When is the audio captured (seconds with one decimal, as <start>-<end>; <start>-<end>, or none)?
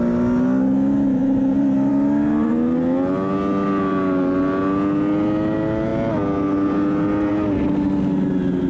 0.0-8.7